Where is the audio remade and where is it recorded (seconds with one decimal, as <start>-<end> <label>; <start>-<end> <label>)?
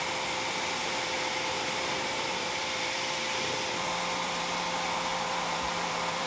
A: 0.0-0.8 recorded; 0.8-4.6 remade; 4.6-5.1 recorded; 5.1-6.3 remade